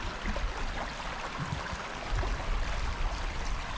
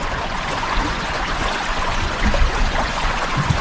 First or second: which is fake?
second